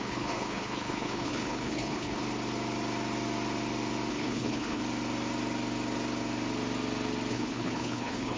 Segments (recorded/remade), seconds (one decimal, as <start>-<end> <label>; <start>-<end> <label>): 0.0-2.2 remade; 2.2-4.1 recorded; 4.1-4.8 remade; 4.8-7.3 recorded; 7.3-8.4 remade